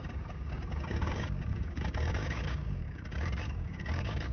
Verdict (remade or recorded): remade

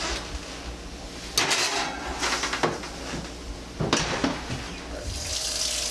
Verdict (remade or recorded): recorded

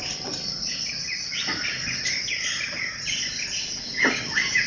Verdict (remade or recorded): recorded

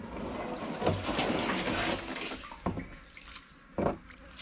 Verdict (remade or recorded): recorded